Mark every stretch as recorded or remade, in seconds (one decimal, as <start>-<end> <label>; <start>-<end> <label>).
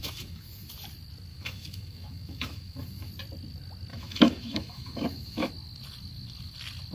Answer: 0.0-0.7 remade; 0.7-1.3 recorded; 1.3-3.1 remade; 3.1-3.9 recorded; 3.9-5.5 remade; 5.5-6.9 recorded